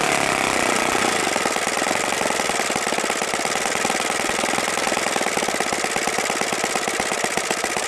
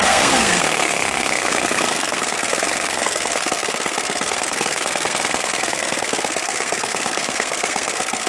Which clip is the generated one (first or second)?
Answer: second